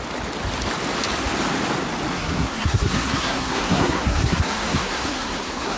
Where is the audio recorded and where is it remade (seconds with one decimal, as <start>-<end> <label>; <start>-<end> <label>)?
0.0-2.1 recorded; 2.1-5.8 remade